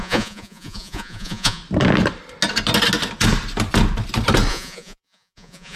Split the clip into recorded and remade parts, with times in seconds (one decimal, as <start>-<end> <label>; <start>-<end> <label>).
0.0-1.6 remade; 1.6-4.5 recorded; 4.5-5.8 remade